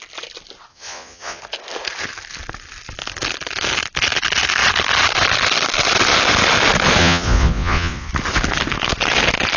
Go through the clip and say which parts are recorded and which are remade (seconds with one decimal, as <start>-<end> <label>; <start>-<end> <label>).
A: 0.0-0.7 recorded; 0.7-1.4 remade; 1.4-7.0 recorded; 7.0-8.1 remade; 8.1-9.6 recorded